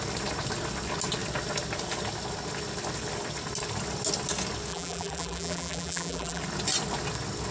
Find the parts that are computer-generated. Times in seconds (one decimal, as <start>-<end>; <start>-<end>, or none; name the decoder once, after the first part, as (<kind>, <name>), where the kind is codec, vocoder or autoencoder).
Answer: 4.7-6.4 (vocoder, BigVGAN v2)